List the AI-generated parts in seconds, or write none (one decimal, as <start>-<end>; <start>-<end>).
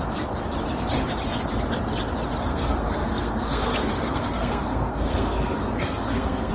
2.5-6.5